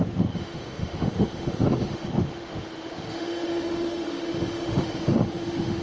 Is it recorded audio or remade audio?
remade